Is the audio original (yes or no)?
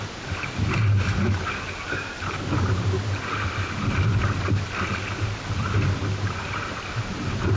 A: yes